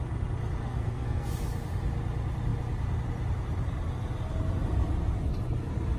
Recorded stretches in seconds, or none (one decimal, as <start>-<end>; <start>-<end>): 0.0-0.6; 1.3-6.0